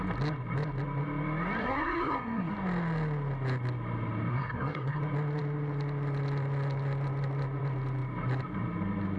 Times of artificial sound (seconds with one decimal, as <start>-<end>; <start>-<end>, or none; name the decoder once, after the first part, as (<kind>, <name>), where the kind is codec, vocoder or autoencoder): 1.6-2.5 (codec, SNAC); 4.3-5.0